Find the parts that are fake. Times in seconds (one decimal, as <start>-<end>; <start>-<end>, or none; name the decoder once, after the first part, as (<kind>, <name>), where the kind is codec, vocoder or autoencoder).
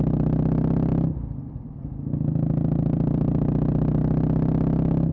none